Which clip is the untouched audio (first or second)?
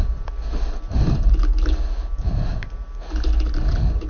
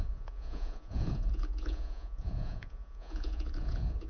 first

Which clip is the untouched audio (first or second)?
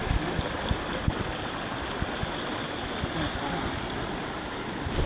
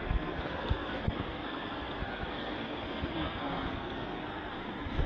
first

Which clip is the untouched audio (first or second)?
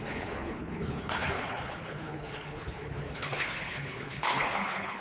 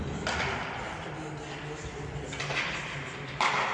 second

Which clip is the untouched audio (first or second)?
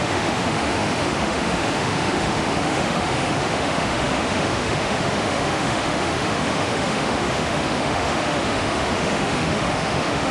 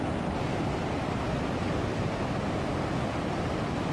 second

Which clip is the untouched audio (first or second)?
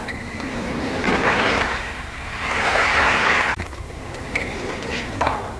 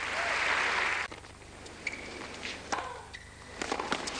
second